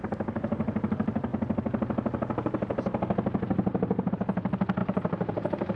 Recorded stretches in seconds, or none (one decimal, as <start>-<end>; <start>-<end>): 1.3-4.1